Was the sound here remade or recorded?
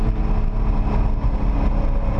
recorded